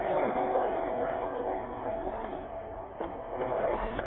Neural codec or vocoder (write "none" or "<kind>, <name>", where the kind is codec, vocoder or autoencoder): codec, SNAC